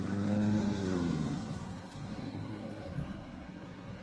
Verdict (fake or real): fake